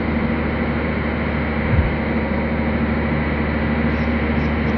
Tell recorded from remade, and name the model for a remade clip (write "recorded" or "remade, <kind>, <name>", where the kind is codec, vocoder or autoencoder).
recorded